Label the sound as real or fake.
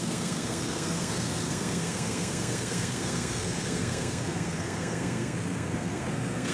fake